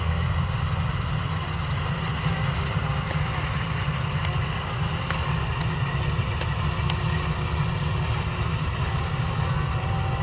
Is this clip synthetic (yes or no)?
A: no